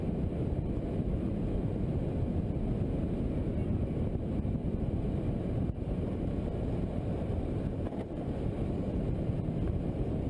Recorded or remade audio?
recorded